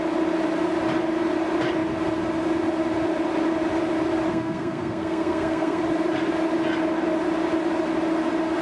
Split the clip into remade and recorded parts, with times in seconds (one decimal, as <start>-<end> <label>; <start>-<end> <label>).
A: 0.0-4.3 recorded; 4.3-5.8 remade; 5.8-8.6 recorded